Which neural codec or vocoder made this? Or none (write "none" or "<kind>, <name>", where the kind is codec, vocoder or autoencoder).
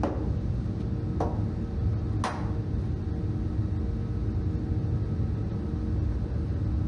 none